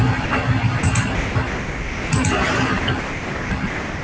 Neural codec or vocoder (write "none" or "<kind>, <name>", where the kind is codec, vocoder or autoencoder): none